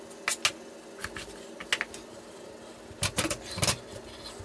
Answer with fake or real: real